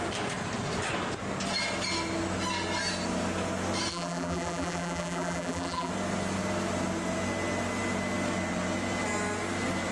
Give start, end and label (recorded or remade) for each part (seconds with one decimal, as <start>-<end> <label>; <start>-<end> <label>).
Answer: 0.0-3.9 recorded; 3.9-5.9 remade; 5.9-9.9 recorded